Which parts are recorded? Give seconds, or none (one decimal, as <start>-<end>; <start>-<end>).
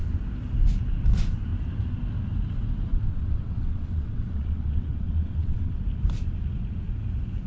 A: 0.0-2.9; 5.8-7.5